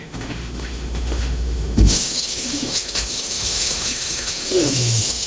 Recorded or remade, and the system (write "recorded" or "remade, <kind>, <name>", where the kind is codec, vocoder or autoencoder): remade, autoencoder, DAC-VAE